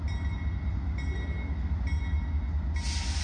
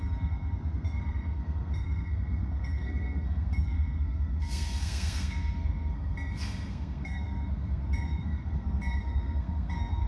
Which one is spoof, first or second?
second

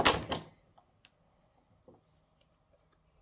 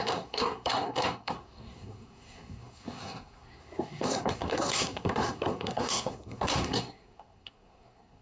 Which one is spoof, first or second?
second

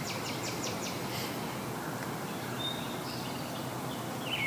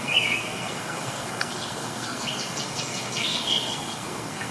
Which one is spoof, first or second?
second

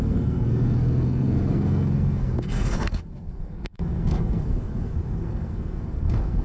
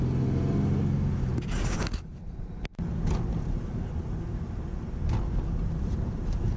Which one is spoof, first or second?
first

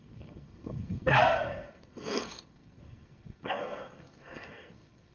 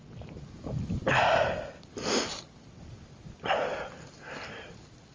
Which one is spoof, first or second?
first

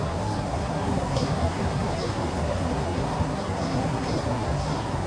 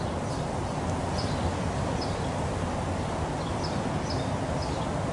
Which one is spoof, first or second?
first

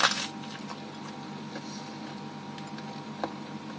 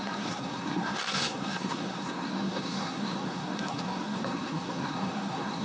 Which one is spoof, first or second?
second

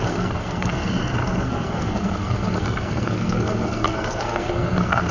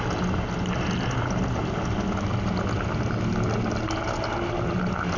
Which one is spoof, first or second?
first